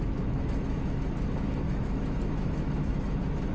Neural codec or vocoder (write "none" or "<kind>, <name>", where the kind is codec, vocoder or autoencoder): autoencoder, DAC-VAE